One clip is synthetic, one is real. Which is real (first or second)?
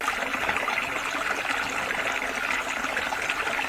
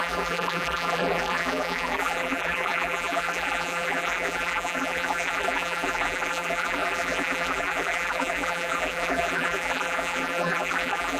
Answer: first